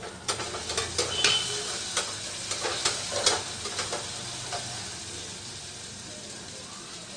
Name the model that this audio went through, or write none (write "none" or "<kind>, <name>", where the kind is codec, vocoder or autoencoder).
none